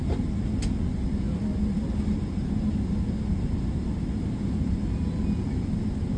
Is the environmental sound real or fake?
real